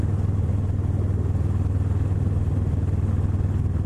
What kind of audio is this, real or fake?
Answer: real